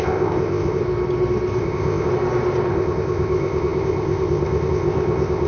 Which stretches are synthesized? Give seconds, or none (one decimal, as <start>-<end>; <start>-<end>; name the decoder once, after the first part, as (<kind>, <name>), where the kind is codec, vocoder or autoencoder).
0.0-0.8 (codec, ZipCodec); 1.6-2.1; 2.7-5.5